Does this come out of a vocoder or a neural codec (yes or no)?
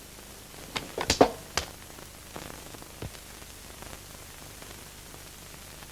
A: no